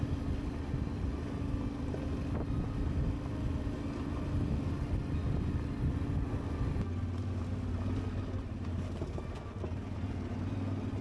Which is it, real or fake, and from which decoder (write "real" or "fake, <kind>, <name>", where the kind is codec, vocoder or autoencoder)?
real